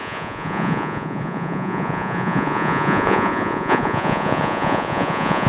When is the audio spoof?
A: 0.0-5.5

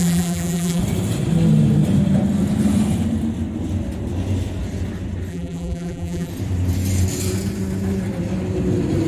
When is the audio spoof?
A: 0.0-0.8; 5.3-6.3

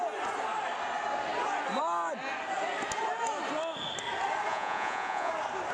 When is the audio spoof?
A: 4.5-5.3

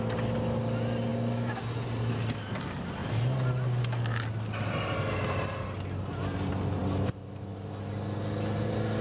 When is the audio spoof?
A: none

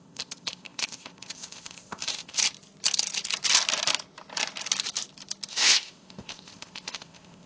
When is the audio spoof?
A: 0.0-2.4; 5.5-7.5

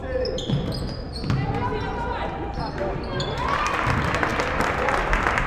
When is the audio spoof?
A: none